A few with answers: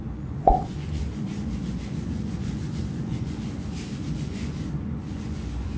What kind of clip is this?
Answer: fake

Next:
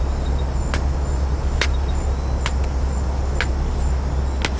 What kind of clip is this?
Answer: real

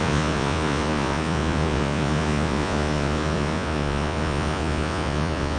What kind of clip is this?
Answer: fake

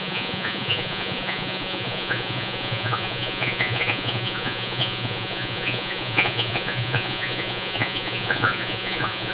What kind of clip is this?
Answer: fake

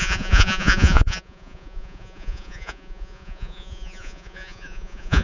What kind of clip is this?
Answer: fake